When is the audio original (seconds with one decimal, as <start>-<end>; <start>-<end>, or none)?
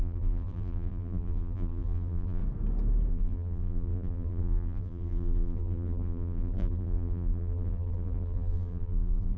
2.4-3.1